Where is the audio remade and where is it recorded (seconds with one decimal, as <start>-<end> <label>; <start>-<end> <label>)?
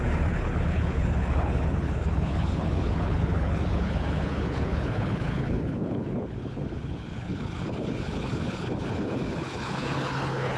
0.0-10.6 remade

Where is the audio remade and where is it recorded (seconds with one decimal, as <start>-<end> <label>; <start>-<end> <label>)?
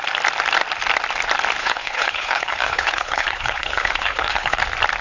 0.0-1.6 recorded; 1.6-4.6 remade; 4.6-5.0 recorded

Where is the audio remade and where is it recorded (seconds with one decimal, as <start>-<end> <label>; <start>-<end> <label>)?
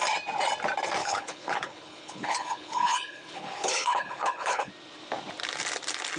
0.0-1.0 recorded; 1.0-4.7 remade; 4.7-6.2 recorded